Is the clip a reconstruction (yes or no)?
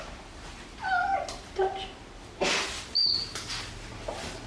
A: no